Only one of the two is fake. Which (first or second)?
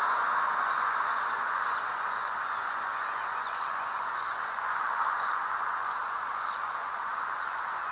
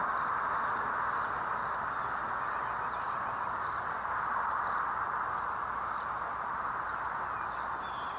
first